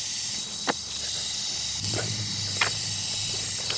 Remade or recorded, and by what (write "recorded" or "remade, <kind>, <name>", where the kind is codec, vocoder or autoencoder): recorded